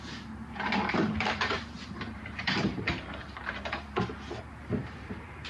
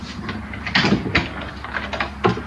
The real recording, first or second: second